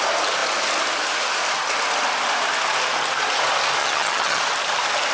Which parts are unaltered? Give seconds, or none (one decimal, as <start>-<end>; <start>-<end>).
0.0-3.8; 4.4-5.1